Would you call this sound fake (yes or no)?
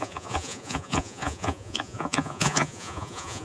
yes